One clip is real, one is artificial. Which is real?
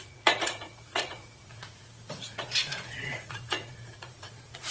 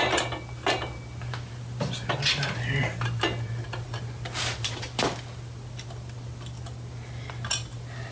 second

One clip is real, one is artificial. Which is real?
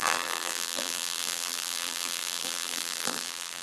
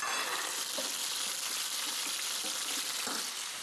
second